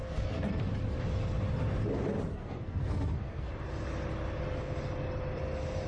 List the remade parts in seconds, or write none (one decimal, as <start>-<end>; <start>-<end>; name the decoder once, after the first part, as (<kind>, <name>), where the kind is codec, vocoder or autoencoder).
0.0-0.7 (codec, SNAC); 2.3-3.5